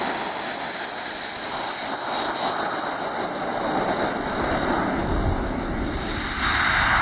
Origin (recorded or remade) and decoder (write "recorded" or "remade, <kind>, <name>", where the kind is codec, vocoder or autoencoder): recorded